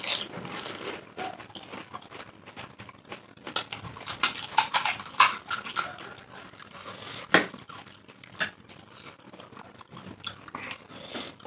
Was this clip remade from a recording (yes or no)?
no